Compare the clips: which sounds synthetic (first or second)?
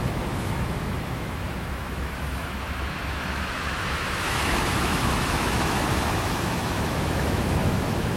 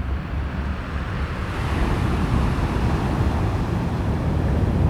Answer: first